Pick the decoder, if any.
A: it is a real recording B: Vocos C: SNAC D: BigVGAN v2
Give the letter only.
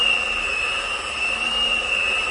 D